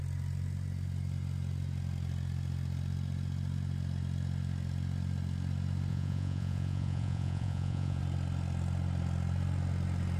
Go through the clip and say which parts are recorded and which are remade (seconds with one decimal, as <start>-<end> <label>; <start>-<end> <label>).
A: 0.0-5.9 recorded; 5.9-8.0 remade; 8.0-10.2 recorded